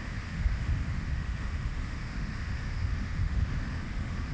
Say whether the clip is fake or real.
fake